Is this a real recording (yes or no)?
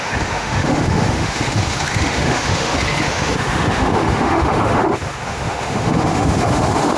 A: no